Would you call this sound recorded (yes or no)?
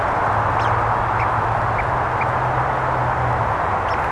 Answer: yes